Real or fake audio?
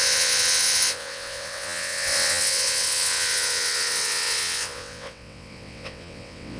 fake